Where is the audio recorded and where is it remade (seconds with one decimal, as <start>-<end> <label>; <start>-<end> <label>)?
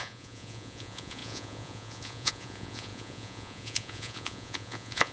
0.0-5.1 remade